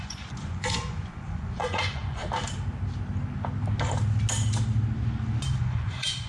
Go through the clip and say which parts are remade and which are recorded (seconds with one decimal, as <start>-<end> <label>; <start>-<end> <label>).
0.0-2.2 remade; 2.2-5.6 recorded; 5.6-6.3 remade